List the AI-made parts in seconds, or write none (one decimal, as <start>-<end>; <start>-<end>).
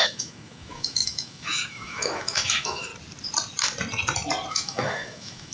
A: 0.0-2.9; 4.5-5.5